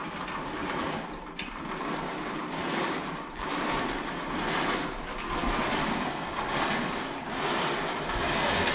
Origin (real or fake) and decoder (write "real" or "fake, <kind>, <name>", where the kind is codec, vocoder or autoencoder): real